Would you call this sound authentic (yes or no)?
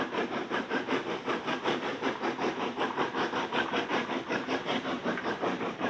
no